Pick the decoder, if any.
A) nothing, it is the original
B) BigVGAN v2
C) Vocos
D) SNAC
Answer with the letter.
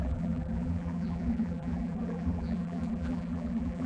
B